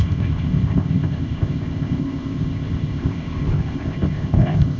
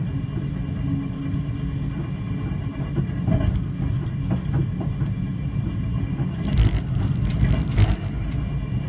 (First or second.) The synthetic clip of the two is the first